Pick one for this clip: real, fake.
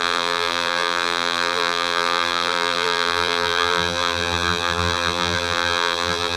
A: fake